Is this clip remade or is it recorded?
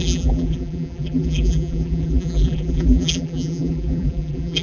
remade